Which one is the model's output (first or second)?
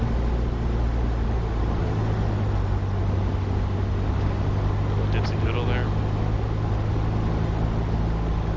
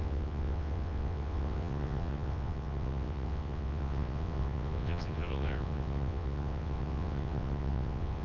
second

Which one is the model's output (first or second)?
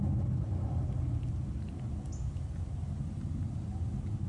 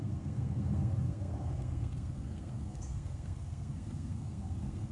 second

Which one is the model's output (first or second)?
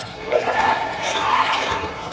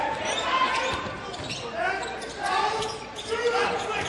first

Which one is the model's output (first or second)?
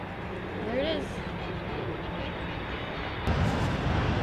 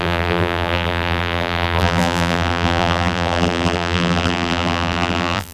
second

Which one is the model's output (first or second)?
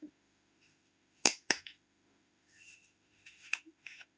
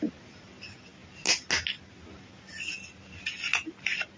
first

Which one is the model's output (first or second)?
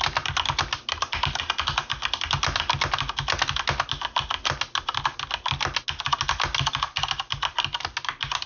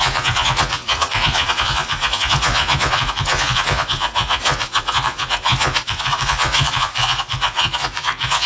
second